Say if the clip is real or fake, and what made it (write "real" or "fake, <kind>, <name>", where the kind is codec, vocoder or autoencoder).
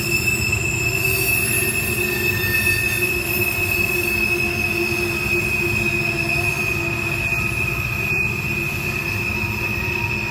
real